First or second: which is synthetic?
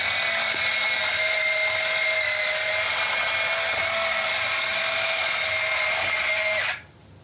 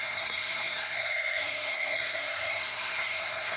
second